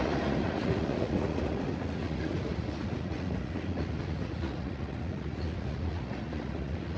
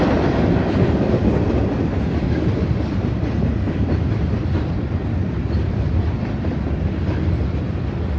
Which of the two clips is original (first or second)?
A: second